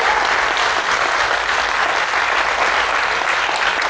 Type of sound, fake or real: real